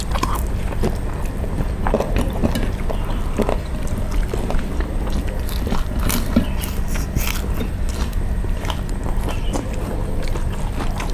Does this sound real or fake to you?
fake